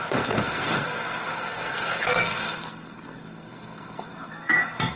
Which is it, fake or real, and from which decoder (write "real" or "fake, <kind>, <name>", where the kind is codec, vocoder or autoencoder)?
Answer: fake, codec, SNAC